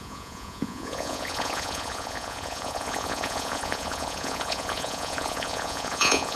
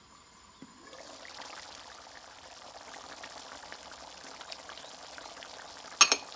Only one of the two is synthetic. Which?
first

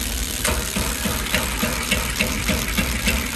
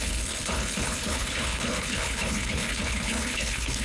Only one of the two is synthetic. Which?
second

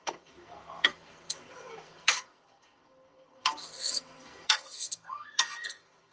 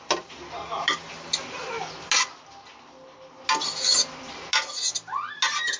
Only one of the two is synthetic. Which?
first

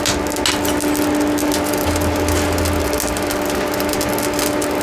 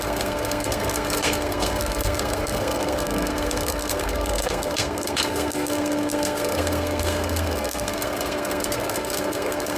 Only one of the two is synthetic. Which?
second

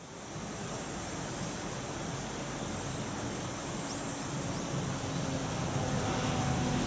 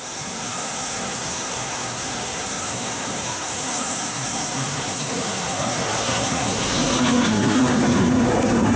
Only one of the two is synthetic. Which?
second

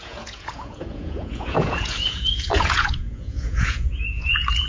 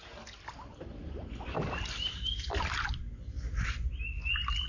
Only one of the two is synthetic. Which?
first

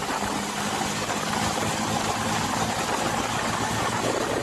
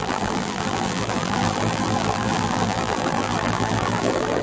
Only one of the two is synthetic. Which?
second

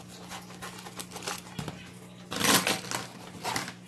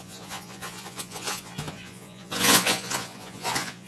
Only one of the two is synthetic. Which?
second